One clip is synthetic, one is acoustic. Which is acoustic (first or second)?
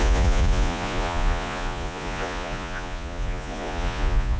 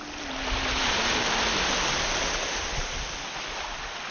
second